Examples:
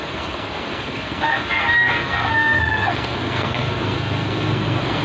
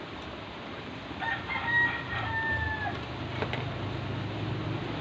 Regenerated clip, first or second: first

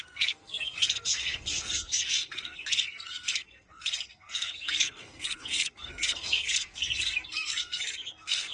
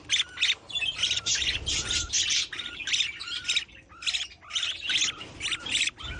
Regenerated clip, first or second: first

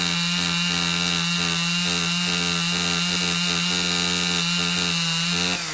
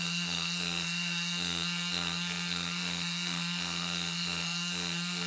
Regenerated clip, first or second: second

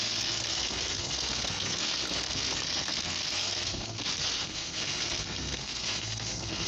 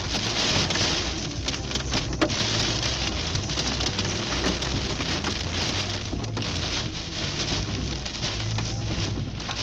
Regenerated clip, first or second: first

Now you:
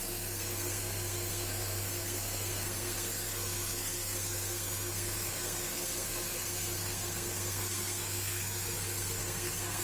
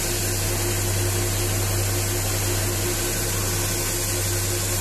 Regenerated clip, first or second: first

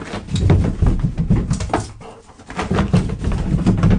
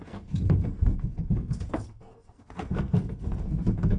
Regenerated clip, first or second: second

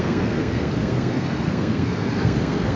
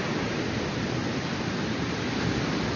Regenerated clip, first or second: first